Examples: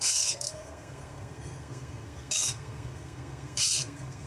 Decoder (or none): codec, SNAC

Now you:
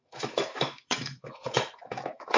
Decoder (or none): autoencoder, DAC-VAE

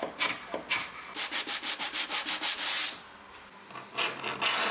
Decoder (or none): none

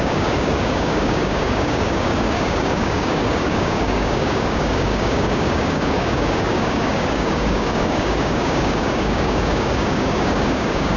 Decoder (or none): codec, DAC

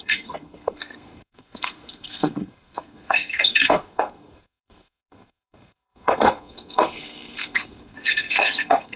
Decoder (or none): codec, SNAC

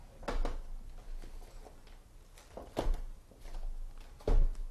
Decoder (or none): none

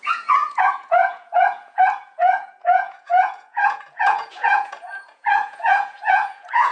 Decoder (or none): vocoder, Vocos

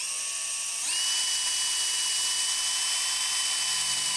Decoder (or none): none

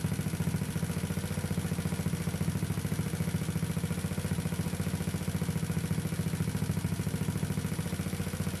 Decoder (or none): none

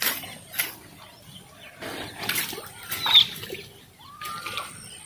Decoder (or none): none